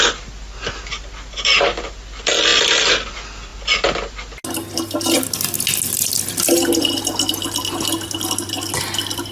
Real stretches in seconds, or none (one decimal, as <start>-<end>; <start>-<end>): 0.0-9.3